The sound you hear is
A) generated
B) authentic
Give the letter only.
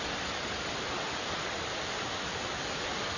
B